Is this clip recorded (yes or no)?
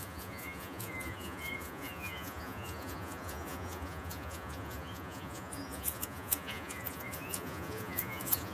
no